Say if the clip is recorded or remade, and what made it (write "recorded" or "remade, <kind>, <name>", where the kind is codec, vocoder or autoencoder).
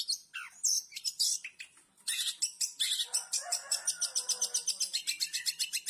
recorded